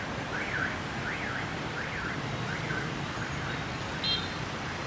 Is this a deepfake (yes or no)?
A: no